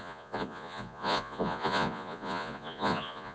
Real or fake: fake